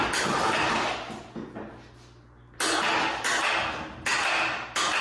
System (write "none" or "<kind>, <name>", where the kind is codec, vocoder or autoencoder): none